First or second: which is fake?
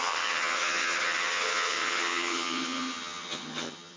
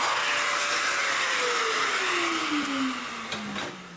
first